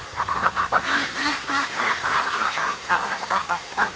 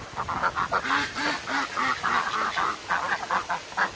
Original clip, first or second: second